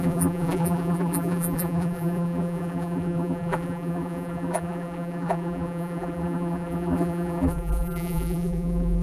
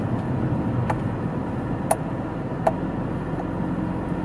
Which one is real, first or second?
second